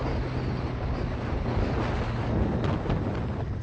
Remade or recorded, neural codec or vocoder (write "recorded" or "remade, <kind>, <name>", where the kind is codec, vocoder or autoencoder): recorded